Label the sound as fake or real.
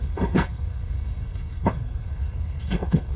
fake